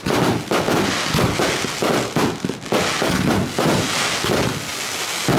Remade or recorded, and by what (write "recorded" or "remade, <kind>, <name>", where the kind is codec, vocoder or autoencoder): recorded